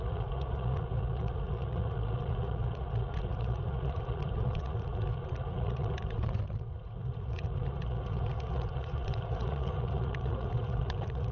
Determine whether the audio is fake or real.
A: fake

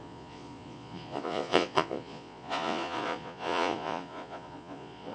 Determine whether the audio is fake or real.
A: fake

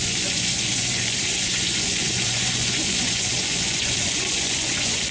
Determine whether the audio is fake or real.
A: fake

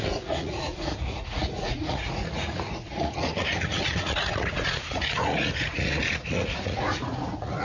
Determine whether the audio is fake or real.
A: fake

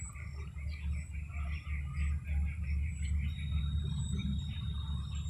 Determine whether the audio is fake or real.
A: real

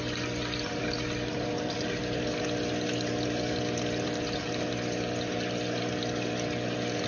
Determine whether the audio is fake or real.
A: real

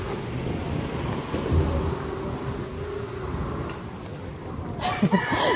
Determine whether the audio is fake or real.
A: real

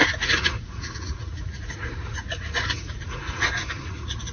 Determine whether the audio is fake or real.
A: fake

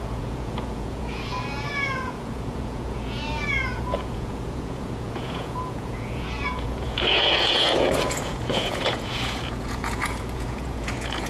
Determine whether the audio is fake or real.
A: fake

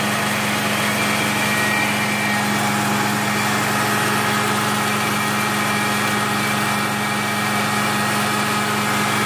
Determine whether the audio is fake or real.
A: real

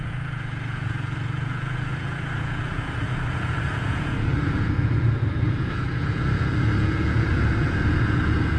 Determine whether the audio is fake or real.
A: fake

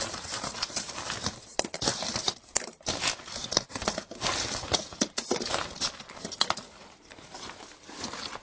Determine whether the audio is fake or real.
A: real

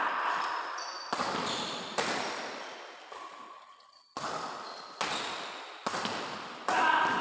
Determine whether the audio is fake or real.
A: real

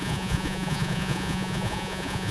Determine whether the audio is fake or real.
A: fake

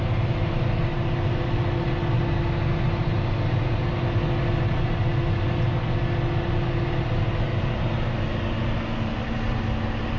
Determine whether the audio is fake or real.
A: real